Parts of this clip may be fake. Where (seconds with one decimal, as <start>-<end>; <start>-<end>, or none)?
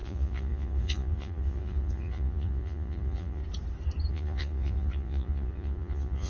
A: 0.0-3.4; 4.1-6.3